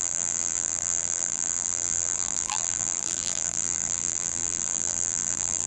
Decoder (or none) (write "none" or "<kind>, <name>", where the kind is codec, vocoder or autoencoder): vocoder, BigVGAN v2